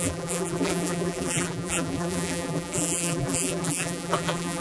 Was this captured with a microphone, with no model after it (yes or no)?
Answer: no